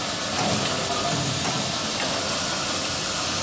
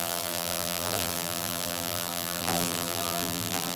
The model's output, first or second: second